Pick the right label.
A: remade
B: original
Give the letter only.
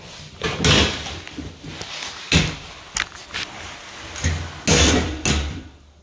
B